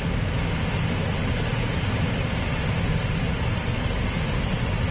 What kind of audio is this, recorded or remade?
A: recorded